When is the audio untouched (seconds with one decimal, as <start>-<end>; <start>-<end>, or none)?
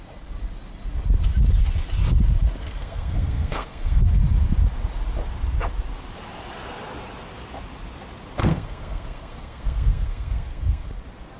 0.0-2.6; 4.0-8.4; 11.0-11.4